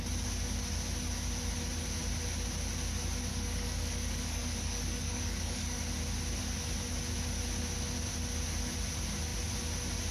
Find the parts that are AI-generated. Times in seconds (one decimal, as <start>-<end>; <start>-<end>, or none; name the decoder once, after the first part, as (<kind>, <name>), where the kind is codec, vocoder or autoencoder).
3.3-5.8 (codec, DAC)